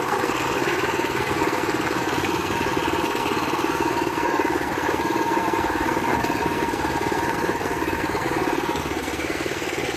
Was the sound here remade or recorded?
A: remade